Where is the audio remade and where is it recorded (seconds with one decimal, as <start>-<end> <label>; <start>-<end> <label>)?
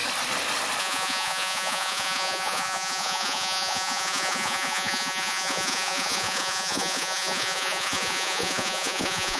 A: 0.0-0.8 recorded; 0.8-9.4 remade